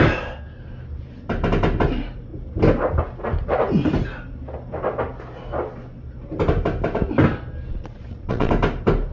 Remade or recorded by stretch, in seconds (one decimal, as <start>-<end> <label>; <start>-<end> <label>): 0.0-7.7 recorded; 7.7-8.5 remade; 8.5-9.1 recorded